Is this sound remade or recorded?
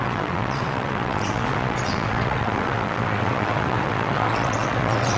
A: remade